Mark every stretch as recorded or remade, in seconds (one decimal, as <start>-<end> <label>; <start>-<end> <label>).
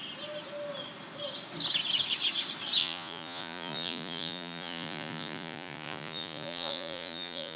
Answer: 0.0-2.8 recorded; 2.8-7.6 remade